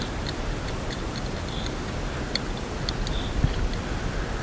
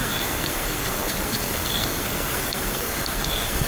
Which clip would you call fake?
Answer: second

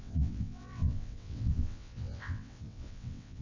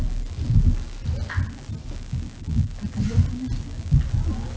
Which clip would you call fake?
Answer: first